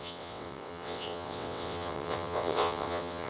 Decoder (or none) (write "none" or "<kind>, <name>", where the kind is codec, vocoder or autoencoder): vocoder, WaveNeXt